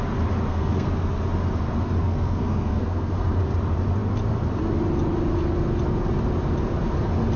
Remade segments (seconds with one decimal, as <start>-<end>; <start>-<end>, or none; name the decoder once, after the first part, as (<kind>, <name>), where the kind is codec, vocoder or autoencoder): 0.5-1.2 (codec, SNAC); 2.0-3.4